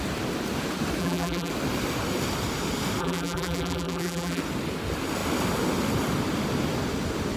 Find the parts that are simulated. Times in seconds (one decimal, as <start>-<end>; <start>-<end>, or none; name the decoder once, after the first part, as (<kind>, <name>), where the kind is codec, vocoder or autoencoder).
1.0-1.5 (vocoder, BigVGAN v2); 3.0-4.4